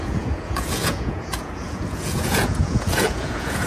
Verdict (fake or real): fake